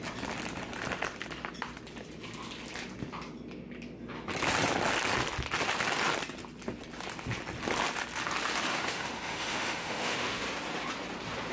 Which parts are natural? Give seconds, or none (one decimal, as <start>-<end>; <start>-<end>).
0.0-8.7; 10.4-11.5